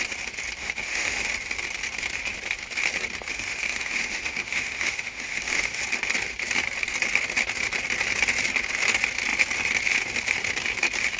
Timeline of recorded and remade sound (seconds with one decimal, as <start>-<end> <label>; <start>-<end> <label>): 0.0-0.6 recorded; 0.6-1.3 remade; 1.3-3.3 recorded; 3.3-5.8 remade; 5.8-11.2 recorded